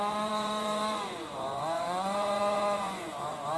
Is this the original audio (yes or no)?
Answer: no